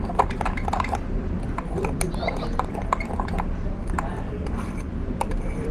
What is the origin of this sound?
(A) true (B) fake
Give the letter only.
B